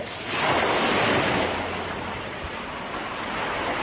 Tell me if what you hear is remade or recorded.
recorded